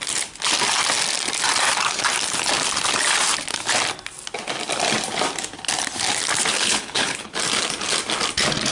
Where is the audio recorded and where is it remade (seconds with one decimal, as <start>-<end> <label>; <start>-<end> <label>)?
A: 0.0-6.5 recorded; 6.5-7.3 remade; 7.3-8.7 recorded